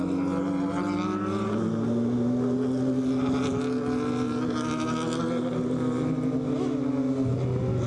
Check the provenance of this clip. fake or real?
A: real